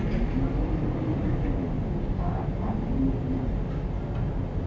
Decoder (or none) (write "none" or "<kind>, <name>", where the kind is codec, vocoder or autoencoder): none